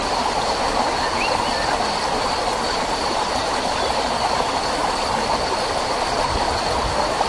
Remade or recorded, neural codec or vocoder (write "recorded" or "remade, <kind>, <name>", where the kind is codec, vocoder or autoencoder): recorded